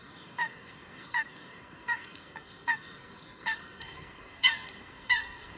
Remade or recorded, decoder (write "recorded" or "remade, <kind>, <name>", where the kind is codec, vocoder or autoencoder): remade, codec, SNAC